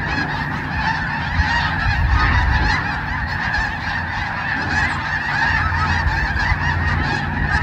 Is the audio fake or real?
real